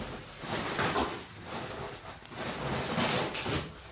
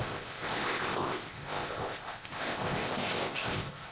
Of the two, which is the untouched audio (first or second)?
first